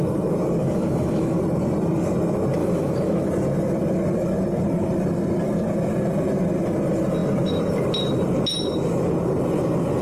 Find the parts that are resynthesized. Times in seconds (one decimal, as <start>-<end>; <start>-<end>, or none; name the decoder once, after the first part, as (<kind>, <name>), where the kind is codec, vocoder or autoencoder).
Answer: 0.6-1.4 (autoencoder, DAC-VAE); 2.6-3.3

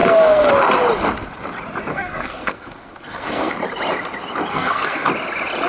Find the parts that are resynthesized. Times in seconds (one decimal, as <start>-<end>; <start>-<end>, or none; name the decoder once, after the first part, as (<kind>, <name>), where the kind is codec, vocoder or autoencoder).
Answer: 0.0-0.5 (codec, SNAC); 1.9-3.5; 4.5-5.1

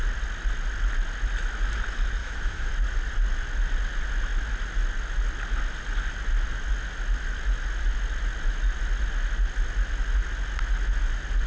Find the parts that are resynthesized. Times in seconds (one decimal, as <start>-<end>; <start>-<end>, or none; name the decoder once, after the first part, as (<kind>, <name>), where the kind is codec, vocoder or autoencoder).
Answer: 2.2-2.7 (autoencoder, DAC-VAE)

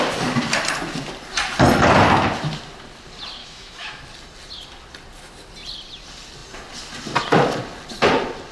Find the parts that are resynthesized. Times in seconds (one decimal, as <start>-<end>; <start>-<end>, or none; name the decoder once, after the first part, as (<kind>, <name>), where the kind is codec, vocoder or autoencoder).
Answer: 3.4-4.0 (autoencoder, DAC-VAE)

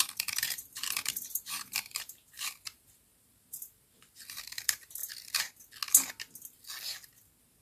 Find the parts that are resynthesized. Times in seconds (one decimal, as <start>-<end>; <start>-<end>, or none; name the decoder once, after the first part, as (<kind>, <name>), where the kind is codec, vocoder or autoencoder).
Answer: 0.0-5.0 (vocoder, BigVGAN v2)

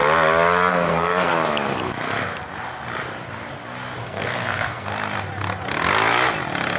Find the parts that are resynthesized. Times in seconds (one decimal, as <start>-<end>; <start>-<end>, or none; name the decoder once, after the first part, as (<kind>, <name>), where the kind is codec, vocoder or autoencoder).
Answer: 0.7-1.3 (codec, SNAC); 4.0-4.9

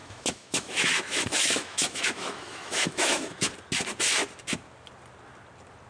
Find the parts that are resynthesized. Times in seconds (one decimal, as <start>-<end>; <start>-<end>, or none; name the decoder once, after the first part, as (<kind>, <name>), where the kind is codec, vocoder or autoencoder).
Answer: 0.0-3.5 (autoencoder, DAC-VAE)

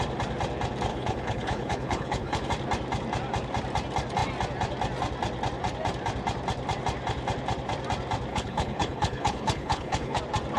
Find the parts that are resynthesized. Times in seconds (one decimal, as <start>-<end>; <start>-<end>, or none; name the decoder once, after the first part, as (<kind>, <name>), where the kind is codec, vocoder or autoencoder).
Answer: 0.9-2.5 (codec, HILCodec); 8.3-10.2